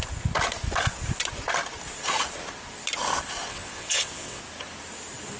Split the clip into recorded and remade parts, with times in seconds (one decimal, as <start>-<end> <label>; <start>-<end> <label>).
0.0-3.5 recorded; 3.5-4.4 remade; 4.4-5.4 recorded